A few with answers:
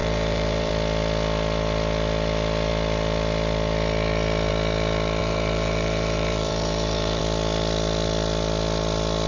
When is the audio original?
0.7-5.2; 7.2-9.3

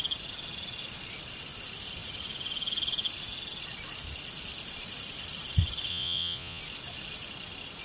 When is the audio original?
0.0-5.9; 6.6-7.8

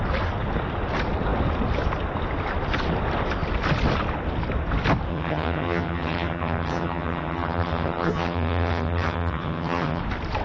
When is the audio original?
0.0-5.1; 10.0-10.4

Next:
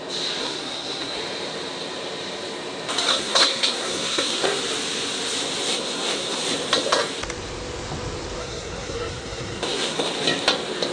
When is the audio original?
0.0-0.4; 1.2-3.1; 4.6-5.7; 6.4-8.4; 10.1-10.9

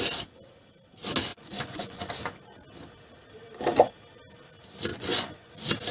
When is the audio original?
0.0-1.3; 2.1-4.9; 5.5-5.9

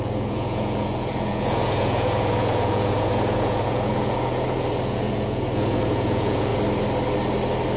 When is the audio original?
6.5-7.8

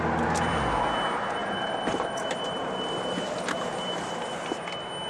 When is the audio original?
0.0-1.4; 4.5-5.1

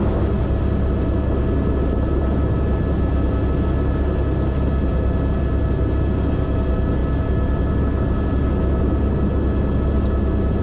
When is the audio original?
0.0-10.6